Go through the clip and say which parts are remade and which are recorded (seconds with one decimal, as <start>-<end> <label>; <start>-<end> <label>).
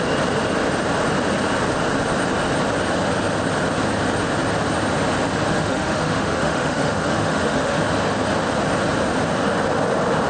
0.0-5.5 recorded; 5.5-7.8 remade; 7.8-10.3 recorded